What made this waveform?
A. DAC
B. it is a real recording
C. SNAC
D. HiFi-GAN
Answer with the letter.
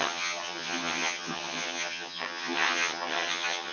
D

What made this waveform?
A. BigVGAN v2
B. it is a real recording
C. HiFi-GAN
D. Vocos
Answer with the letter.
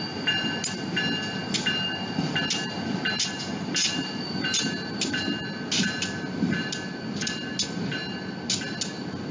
B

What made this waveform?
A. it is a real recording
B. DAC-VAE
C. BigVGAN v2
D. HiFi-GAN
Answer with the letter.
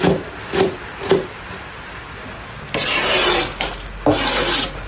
A